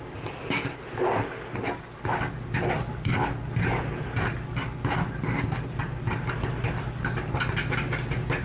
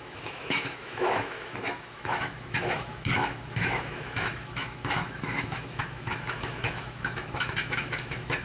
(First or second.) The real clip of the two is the first